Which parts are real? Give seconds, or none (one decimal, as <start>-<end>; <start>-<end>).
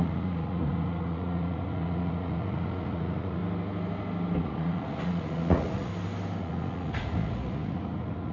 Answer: 3.4-4.4; 5.9-6.4